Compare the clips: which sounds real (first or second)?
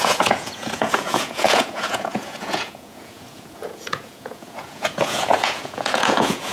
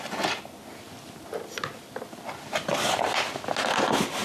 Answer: second